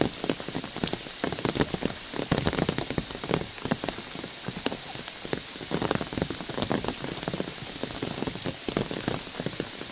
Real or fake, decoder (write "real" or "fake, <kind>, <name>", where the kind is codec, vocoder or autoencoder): real